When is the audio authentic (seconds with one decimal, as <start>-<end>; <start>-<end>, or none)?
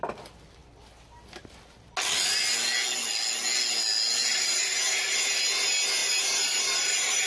0.0-4.3; 5.4-6.0